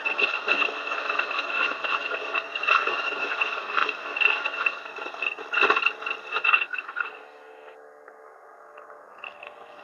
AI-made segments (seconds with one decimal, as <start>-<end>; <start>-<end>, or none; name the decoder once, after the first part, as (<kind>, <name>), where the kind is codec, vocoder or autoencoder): 0.0-5.4 (codec, SNAC); 6.2-9.8